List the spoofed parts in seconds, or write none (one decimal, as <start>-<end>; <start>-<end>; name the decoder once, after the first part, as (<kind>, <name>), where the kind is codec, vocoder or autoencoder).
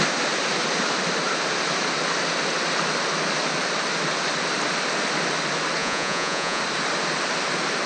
5.8-6.6 (vocoder, Vocos)